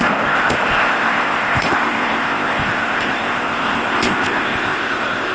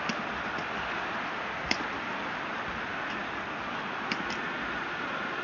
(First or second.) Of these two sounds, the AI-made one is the first